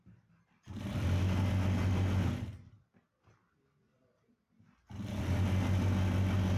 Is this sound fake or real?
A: real